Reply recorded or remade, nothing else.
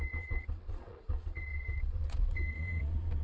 remade